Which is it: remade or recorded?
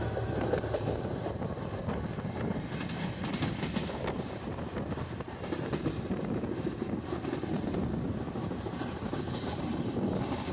recorded